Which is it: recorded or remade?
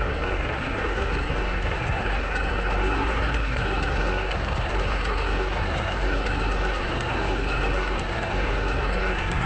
remade